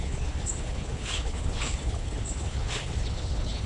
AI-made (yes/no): yes